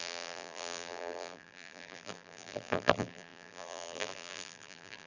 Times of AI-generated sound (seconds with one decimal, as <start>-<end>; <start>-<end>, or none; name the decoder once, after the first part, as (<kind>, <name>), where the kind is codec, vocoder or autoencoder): 0.0-5.1 (vocoder, BigVGAN v2)